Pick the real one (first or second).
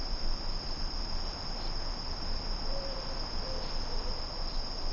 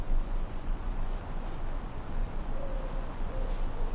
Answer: first